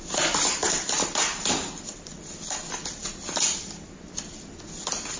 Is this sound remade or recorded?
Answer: recorded